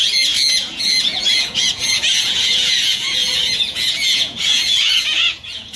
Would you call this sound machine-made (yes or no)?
yes